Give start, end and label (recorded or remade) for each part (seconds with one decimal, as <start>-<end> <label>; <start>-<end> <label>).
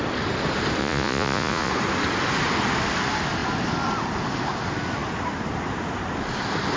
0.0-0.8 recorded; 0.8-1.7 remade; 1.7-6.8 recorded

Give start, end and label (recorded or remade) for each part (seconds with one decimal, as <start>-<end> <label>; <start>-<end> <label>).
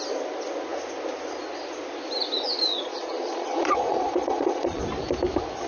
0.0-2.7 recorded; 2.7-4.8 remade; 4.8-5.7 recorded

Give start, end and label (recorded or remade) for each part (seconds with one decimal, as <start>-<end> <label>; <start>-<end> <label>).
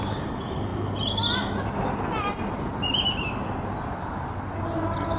0.0-5.2 recorded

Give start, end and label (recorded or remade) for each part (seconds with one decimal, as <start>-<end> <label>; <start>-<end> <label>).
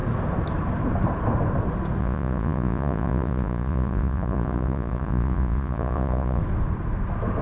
0.0-2.0 recorded; 2.0-6.4 remade; 6.4-7.4 recorded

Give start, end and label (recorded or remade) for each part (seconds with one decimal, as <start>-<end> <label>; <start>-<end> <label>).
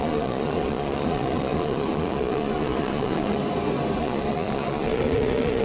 0.0-3.4 remade; 3.4-4.0 recorded; 4.0-5.6 remade